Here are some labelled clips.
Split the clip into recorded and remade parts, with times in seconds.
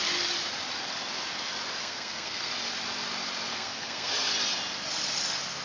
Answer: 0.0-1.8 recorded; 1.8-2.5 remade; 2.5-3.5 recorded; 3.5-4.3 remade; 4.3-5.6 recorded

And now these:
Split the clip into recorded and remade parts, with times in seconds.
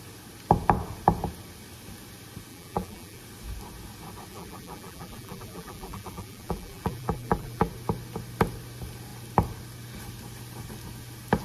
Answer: 0.0-2.5 recorded; 2.5-3.2 remade; 3.2-4.3 recorded; 4.3-7.7 remade; 7.7-11.4 recorded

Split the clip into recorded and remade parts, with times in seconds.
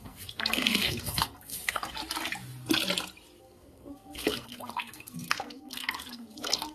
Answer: 0.0-2.0 remade; 2.0-3.4 recorded; 3.4-6.7 remade